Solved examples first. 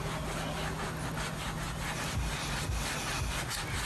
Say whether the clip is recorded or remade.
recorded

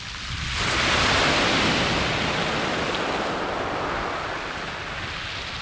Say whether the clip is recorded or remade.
recorded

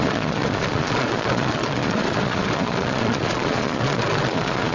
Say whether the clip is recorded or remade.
remade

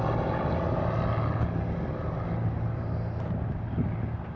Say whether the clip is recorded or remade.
recorded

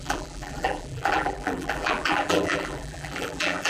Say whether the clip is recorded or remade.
remade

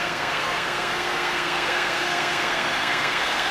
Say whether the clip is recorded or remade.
remade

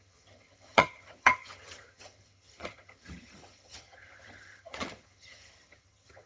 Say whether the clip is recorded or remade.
remade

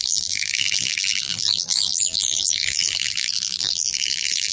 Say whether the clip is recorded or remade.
remade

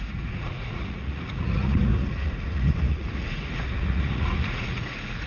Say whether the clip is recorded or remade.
remade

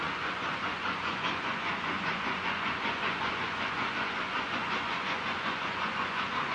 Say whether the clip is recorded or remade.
remade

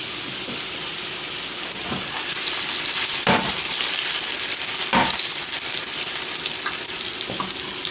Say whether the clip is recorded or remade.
recorded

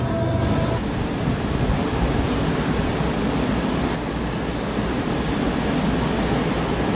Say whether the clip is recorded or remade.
recorded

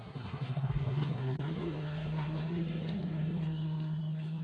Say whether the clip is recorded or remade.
remade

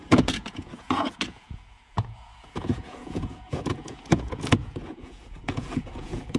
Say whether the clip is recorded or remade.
remade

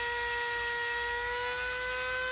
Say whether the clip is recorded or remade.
recorded